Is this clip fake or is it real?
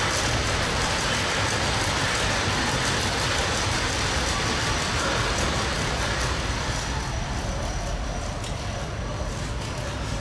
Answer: real